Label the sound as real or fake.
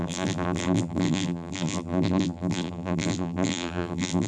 fake